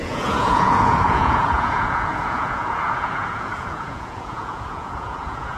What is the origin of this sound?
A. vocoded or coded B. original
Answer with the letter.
A